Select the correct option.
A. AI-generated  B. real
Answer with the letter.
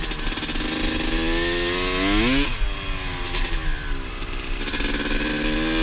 B